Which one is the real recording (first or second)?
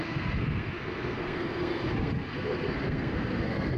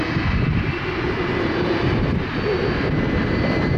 second